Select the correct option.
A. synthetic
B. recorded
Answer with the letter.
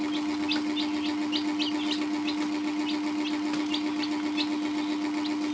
B